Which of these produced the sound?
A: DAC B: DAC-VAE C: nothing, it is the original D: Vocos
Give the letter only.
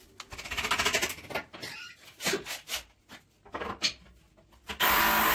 C